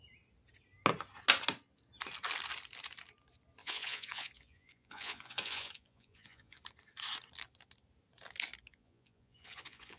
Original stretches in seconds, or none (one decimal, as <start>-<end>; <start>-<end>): 0.0-3.6; 6.6-8.7